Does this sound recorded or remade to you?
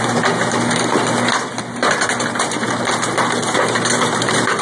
recorded